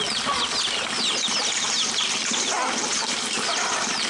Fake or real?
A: real